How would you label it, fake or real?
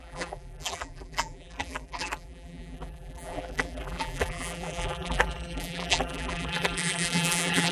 fake